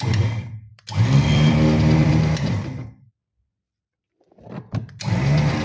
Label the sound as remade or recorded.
remade